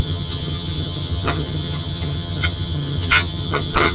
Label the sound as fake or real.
fake